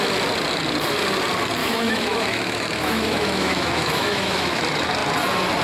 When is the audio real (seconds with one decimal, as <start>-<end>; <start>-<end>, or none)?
0.0-1.6; 4.6-5.6